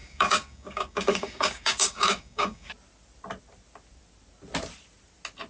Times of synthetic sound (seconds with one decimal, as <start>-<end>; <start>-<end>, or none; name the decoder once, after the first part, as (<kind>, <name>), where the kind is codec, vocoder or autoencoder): 0.0-2.7 (codec, DAC)

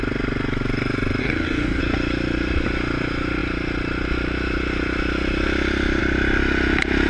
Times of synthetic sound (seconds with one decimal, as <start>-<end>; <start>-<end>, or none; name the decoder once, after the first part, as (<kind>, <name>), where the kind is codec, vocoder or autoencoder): 1.2-1.8 (codec, DAC)